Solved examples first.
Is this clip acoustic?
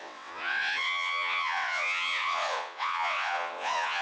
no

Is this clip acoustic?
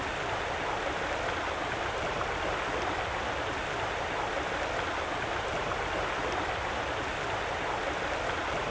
yes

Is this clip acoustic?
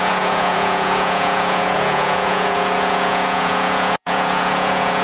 no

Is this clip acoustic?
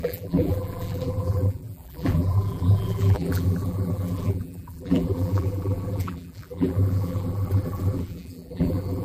no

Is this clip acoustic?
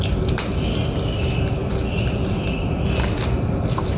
yes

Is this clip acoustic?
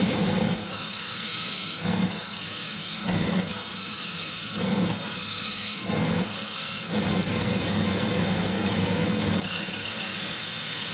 no